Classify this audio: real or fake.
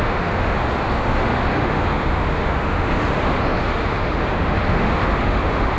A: fake